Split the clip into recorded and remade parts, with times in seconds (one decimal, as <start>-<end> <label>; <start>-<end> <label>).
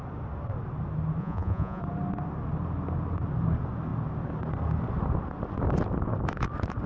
0.0-1.2 recorded; 1.2-1.8 remade; 1.8-6.9 recorded